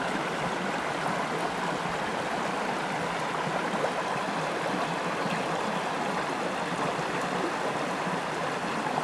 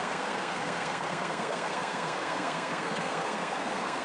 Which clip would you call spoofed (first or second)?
second